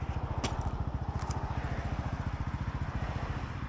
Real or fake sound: real